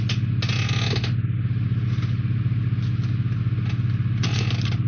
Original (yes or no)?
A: yes